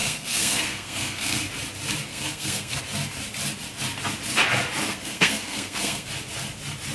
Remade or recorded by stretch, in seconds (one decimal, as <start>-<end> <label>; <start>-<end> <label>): 0.0-1.5 remade; 1.5-2.1 recorded; 2.1-2.8 remade; 2.8-4.9 recorded; 4.9-6.1 remade; 6.1-6.9 recorded